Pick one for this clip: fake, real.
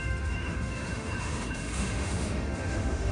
fake